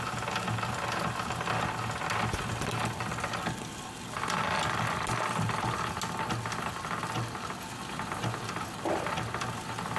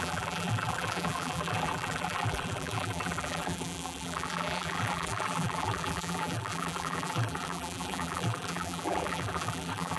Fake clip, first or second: second